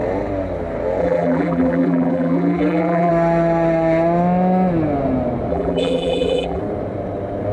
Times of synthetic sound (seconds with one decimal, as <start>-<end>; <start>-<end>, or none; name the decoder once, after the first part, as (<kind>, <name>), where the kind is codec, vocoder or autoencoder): 1.0-3.1 (vocoder, BigVGAN v2); 5.5-6.6